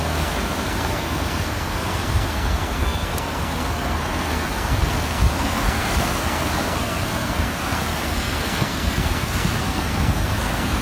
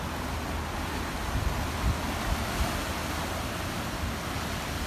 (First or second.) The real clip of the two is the second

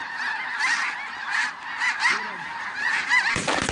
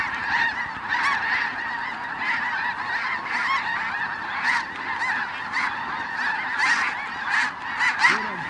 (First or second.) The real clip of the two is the second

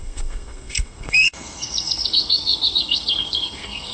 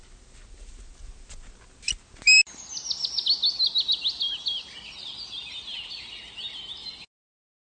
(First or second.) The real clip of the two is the second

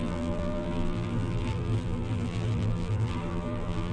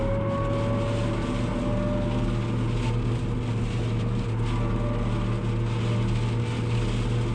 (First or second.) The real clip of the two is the second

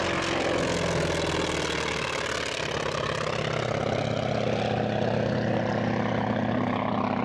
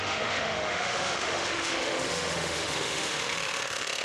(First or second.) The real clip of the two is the first